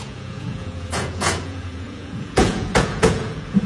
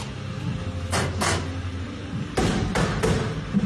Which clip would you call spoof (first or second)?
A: first